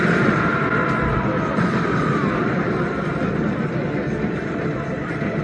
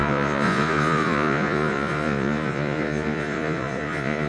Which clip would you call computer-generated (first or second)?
second